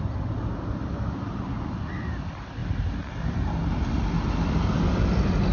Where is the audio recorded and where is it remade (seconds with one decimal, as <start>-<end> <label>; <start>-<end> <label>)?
0.0-5.5 recorded